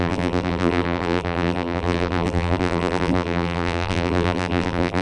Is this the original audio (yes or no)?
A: no